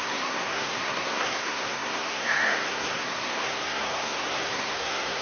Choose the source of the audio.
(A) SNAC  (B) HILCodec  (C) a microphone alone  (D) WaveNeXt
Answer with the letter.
A